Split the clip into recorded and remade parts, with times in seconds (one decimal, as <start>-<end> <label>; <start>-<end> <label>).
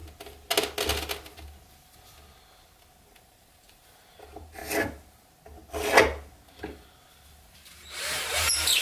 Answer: 0.0-3.0 recorded; 3.0-4.6 remade; 4.6-7.5 recorded; 7.5-8.8 remade